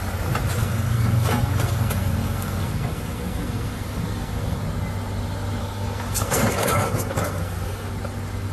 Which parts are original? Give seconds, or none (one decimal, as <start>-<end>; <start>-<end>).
0.0-0.6; 4.6-5.6; 7.9-8.5

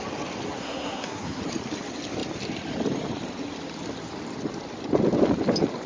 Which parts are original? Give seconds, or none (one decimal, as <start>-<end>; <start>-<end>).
0.0-0.6; 1.4-5.9

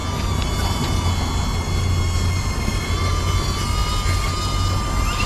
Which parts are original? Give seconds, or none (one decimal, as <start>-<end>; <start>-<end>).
0.0-5.3

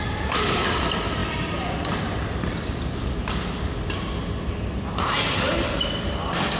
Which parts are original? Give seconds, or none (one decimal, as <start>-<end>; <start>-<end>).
0.0-6.6